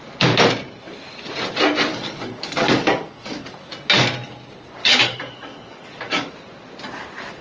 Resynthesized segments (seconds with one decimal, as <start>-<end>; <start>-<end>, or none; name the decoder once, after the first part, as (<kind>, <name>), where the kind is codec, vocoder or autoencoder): 1.9-3.5 (codec, DAC); 4.8-6.3

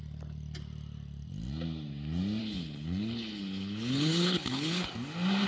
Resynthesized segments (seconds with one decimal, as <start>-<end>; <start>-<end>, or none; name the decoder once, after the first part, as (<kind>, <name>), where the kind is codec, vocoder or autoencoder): 2.4-4.9 (codec, HILCodec)

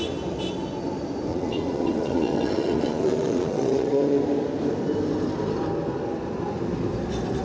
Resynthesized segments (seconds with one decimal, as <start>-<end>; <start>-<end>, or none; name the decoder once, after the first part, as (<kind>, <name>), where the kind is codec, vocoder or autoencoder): 1.3-4.2 (vocoder, Vocos)